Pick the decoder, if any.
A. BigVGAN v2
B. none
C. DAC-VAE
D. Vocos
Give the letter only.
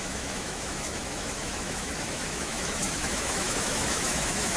C